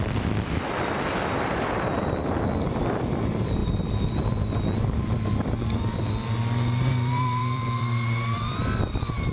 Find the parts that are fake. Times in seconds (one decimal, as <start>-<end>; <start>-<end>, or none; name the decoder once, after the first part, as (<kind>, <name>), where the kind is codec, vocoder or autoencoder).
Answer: 0.0-8.6 (vocoder, BigVGAN v2)